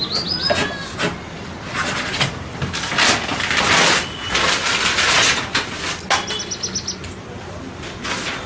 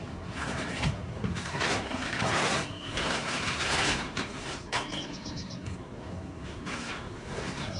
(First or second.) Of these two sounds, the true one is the first